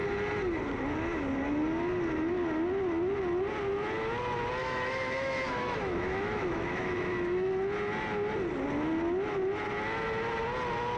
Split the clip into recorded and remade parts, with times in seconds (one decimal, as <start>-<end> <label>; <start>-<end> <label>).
0.0-4.6 recorded; 4.6-7.5 remade; 7.5-11.0 recorded